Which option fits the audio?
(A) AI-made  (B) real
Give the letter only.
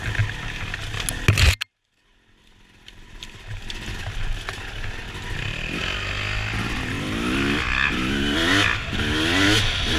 B